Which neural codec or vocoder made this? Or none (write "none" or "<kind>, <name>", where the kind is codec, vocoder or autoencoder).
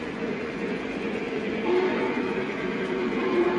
vocoder, Vocos